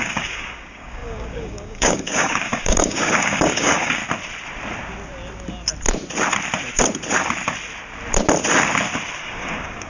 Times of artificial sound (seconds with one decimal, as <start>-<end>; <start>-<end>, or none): 0.0-4.0; 9.2-9.9

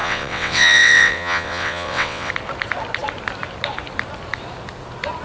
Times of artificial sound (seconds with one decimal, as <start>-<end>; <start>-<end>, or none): 0.0-2.3

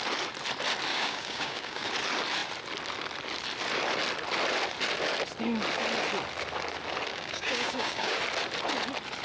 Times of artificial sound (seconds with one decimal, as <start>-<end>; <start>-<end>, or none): 0.9-1.9; 7.1-8.2

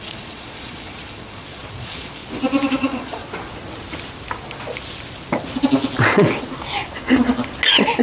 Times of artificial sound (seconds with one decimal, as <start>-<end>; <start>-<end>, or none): 0.0-2.2; 2.7-3.2

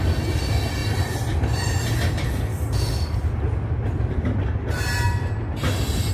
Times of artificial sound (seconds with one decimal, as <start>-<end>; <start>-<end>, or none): 2.5-3.3

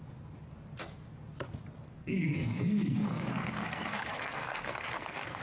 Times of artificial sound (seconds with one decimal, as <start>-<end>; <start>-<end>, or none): 2.0-5.4

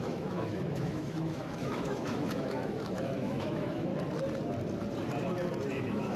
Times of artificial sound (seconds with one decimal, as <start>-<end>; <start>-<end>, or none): 0.0-3.9; 5.7-6.2

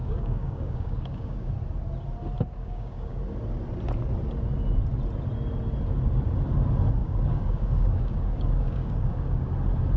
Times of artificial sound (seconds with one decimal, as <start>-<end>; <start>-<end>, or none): 0.0-1.5; 2.6-3.2; 7.0-9.5